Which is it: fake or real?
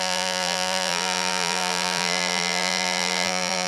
fake